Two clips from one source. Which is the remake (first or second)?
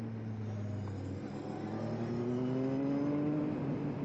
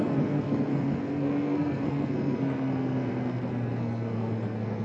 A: second